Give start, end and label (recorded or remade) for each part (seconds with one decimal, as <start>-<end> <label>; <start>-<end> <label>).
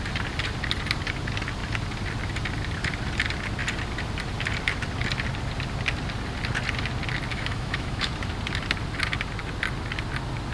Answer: 0.0-7.3 recorded; 7.3-8.1 remade; 8.1-10.5 recorded